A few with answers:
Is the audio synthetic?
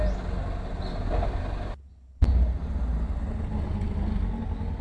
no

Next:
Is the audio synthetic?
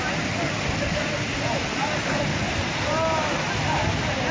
no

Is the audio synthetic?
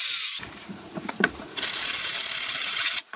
yes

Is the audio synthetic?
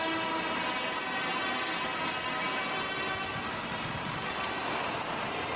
no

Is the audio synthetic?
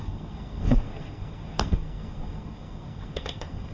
yes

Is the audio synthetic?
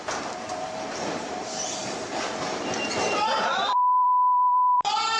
yes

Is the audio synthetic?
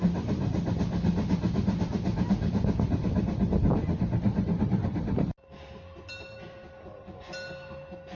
no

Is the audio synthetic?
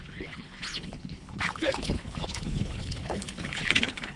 yes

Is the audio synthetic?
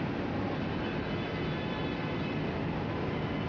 no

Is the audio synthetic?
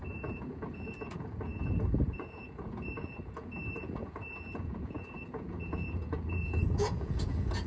yes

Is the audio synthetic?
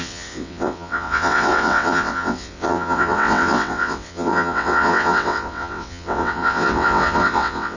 yes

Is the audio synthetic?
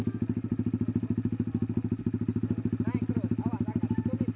no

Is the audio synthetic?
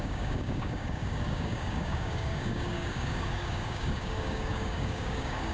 yes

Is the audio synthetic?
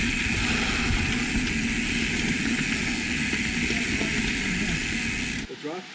no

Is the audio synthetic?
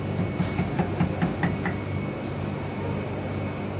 no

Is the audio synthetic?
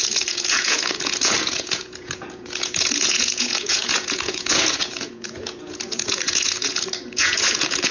yes